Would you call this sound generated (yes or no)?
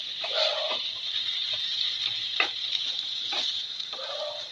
yes